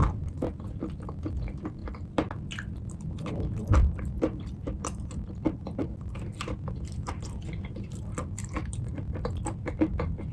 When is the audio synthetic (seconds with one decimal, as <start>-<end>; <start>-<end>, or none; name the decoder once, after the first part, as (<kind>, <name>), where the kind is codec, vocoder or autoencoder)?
none